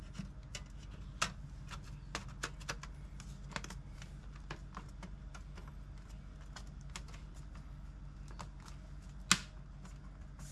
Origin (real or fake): real